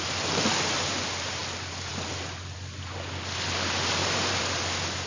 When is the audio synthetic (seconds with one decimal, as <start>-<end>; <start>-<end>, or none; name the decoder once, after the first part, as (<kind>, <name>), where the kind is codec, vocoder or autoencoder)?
4.0-4.6 (vocoder, BigVGAN v2)